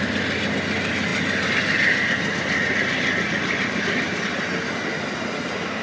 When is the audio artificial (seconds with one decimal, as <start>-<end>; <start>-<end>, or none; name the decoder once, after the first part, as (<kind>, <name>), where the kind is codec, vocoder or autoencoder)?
none